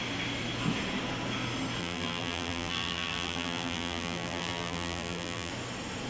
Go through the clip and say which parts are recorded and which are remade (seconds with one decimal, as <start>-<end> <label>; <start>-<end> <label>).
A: 0.0-1.8 recorded; 1.8-5.5 remade; 5.5-6.1 recorded